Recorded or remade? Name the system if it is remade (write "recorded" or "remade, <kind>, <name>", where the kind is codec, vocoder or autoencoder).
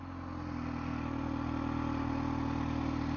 recorded